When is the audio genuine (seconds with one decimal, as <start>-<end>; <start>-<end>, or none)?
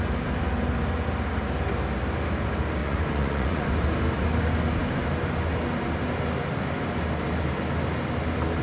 0.0-2.8; 3.7-8.6